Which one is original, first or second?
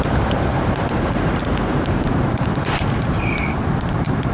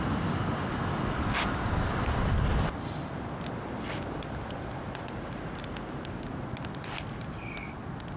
second